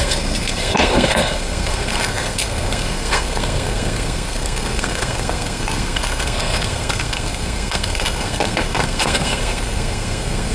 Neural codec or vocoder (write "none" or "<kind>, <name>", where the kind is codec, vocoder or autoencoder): codec, SNAC